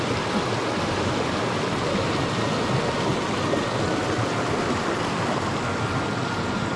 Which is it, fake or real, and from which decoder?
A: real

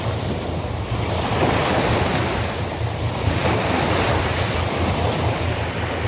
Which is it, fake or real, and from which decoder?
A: real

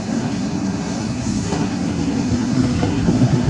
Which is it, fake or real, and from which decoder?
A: fake, codec, SNAC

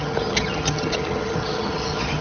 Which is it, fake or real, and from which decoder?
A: fake, vocoder, HiFi-GAN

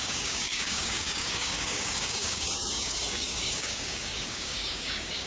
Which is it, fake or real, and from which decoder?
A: fake, codec, DAC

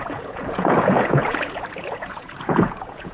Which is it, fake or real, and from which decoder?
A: fake, vocoder, Vocos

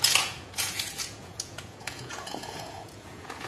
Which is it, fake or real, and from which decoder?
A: fake, vocoder, Vocos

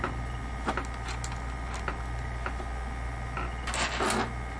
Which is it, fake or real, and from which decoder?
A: real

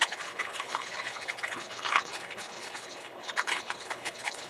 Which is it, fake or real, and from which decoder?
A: fake, codec, HILCodec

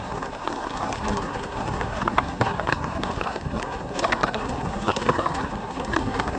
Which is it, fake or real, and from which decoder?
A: fake, codec, SNAC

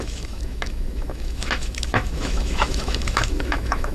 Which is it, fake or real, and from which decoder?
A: fake, autoencoder, DAC-VAE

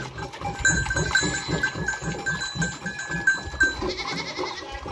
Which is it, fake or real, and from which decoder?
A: real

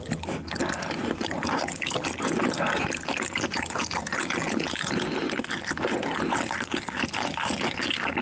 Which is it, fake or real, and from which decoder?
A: real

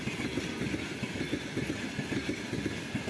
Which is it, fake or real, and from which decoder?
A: real